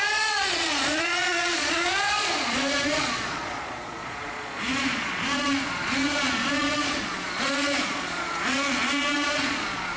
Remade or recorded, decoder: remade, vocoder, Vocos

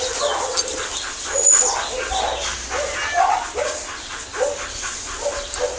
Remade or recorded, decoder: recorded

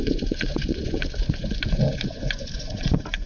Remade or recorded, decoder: remade, vocoder, Vocos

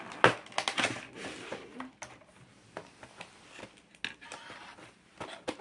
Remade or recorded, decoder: recorded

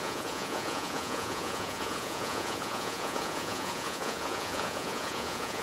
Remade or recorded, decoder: remade, vocoder, Vocos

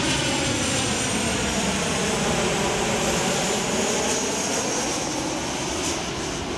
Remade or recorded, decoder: recorded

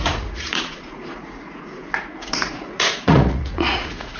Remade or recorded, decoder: remade, vocoder, Vocos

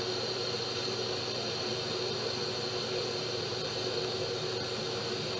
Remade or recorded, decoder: recorded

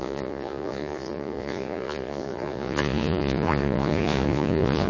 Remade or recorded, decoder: remade, vocoder, Vocos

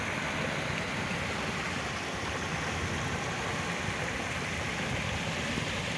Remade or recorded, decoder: recorded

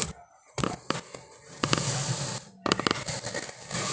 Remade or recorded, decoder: recorded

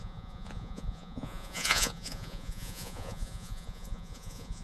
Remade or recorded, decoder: remade, vocoder, Vocos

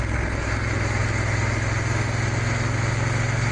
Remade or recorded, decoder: recorded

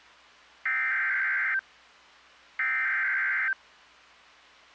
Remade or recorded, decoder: recorded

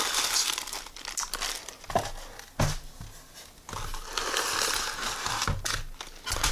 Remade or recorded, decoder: recorded